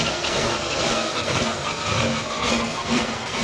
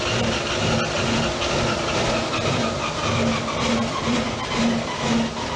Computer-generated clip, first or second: first